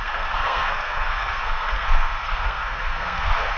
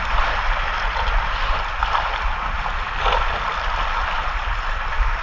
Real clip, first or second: second